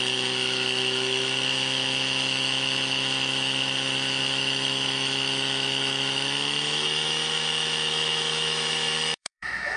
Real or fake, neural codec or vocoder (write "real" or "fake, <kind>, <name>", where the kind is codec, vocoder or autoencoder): fake, autoencoder, DAC-VAE